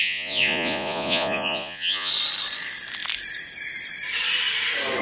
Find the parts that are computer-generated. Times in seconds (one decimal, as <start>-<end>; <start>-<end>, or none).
0.0-2.1